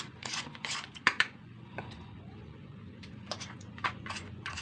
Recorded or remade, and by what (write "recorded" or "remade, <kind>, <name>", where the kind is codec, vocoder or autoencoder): remade, vocoder, Vocos